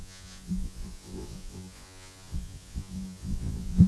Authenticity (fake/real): fake